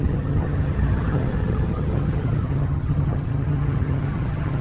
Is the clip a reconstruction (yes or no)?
yes